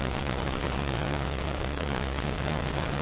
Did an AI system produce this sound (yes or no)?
yes